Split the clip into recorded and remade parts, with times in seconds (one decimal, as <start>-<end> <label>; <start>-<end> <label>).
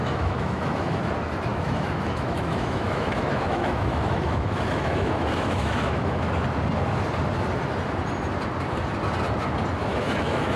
0.0-1.0 remade; 1.0-1.5 recorded; 1.5-6.3 remade; 6.3-9.8 recorded; 9.8-10.6 remade